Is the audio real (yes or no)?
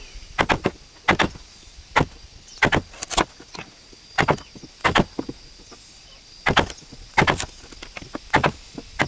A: yes